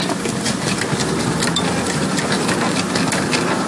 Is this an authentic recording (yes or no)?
yes